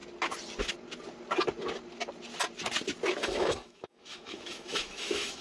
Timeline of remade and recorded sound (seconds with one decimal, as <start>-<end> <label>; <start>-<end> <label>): 0.0-3.2 recorded; 3.2-5.4 remade